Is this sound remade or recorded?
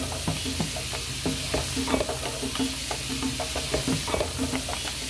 recorded